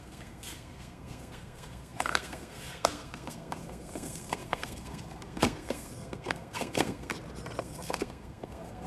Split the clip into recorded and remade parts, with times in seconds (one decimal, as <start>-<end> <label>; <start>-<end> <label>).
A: 0.0-7.1 remade; 7.1-7.6 recorded; 7.6-8.9 remade